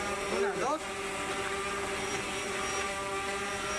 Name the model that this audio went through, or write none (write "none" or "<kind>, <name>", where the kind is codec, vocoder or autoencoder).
none